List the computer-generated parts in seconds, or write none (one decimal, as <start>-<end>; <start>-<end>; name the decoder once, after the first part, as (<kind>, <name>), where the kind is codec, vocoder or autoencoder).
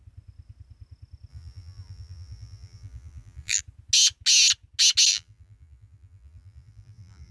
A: 1.3-3.6 (vocoder, BigVGAN v2); 5.1-7.3